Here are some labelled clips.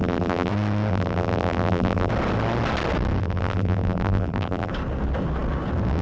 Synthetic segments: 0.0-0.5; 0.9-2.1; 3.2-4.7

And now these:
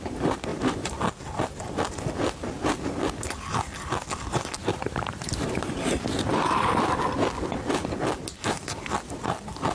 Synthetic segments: 0.5-1.0; 4.6-6.3